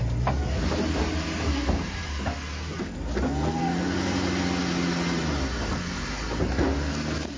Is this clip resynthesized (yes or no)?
no